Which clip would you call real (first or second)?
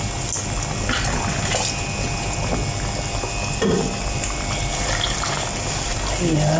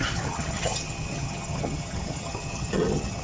first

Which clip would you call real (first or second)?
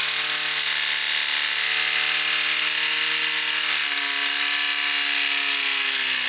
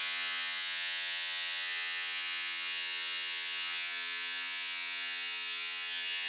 first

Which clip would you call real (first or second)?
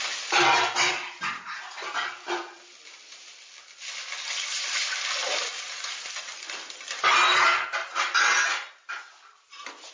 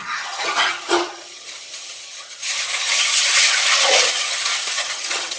first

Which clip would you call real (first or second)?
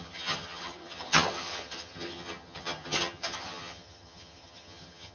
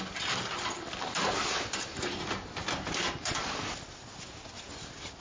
second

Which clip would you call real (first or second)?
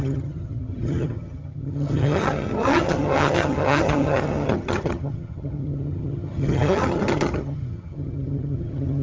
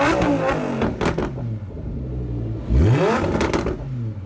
second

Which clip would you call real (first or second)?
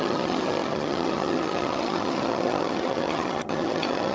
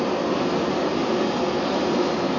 second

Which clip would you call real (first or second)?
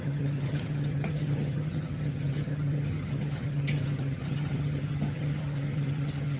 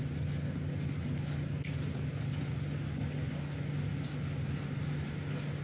second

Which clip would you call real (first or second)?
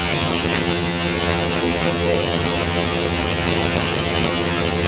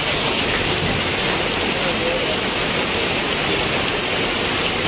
second